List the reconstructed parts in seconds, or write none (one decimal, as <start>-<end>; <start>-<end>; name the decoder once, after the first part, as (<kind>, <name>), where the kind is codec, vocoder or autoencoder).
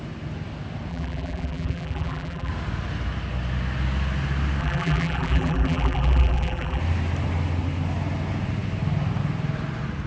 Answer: 0.9-2.5 (vocoder, BigVGAN v2); 4.6-6.8